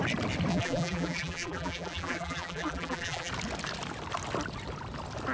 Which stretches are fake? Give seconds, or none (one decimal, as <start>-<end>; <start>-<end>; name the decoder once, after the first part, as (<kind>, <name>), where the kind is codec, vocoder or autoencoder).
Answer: 0.5-3.3 (vocoder, BigVGAN v2)